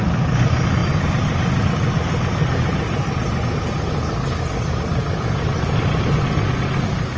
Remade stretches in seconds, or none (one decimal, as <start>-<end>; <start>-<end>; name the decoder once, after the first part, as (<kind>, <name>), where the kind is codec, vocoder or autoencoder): none